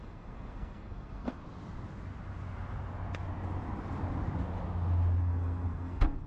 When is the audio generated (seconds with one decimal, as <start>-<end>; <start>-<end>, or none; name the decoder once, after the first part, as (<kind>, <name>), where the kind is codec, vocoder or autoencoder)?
0.0-1.4 (codec, SNAC); 5.2-6.3